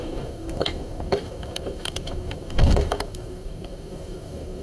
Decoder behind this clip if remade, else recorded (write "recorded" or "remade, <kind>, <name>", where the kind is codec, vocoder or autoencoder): remade, codec, DAC